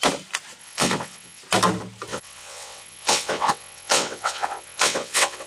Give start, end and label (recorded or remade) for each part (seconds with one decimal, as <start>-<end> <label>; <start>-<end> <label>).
0.0-0.6 recorded; 0.6-1.4 remade; 1.4-2.1 recorded; 2.1-5.5 remade